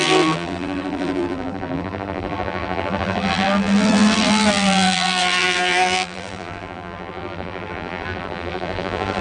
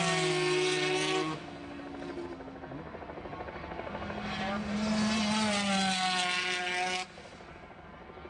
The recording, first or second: second